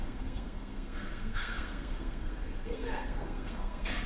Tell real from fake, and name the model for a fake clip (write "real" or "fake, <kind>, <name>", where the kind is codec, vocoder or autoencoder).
fake, codec, SNAC